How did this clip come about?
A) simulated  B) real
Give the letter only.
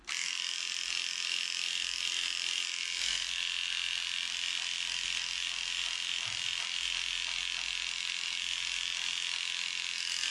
B